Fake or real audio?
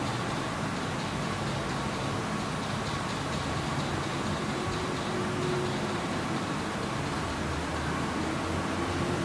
real